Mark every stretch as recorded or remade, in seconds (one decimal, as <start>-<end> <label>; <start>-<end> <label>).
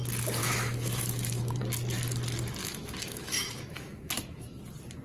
0.0-0.4 recorded; 0.4-1.6 remade; 1.6-2.6 recorded; 2.6-4.6 remade; 4.6-5.0 recorded